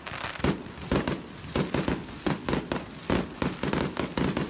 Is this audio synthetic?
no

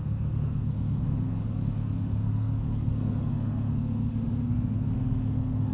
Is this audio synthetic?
yes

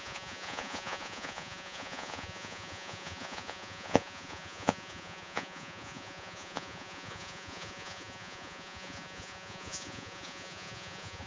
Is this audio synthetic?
yes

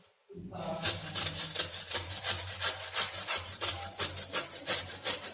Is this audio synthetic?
no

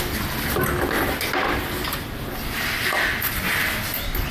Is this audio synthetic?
no